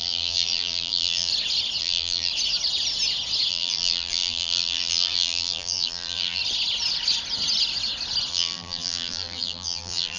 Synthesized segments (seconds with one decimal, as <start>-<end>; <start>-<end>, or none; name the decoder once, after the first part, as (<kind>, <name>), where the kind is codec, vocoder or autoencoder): 0.0-1.3 (vocoder, BigVGAN v2); 1.8-2.3; 3.5-6.4; 8.3-10.2